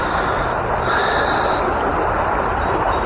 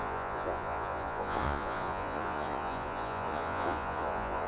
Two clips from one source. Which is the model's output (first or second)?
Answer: second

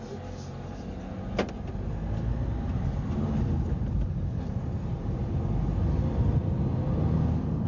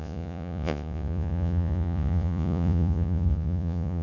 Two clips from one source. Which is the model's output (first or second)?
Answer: second